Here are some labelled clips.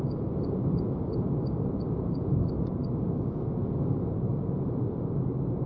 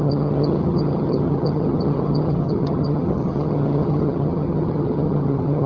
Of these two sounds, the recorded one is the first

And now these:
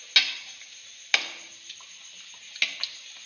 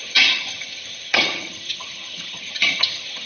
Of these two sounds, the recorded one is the first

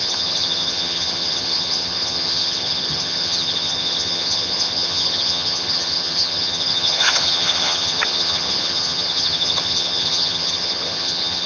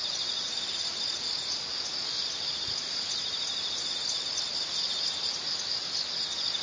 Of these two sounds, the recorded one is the second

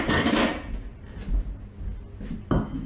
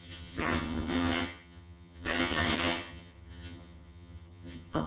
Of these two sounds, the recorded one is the first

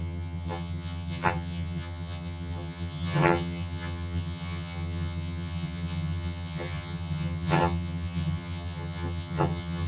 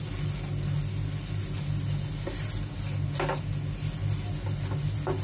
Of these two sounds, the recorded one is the second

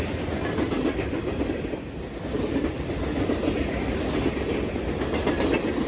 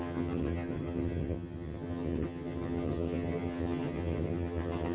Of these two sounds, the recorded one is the first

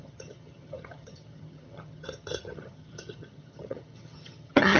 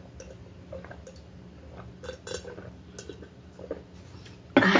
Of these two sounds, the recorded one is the second